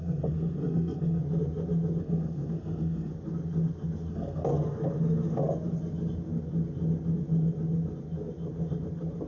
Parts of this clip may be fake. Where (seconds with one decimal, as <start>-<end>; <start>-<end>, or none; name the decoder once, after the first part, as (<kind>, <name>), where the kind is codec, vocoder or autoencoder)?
0.0-1.2 (codec, SNAC); 2.0-3.1; 4.1-4.5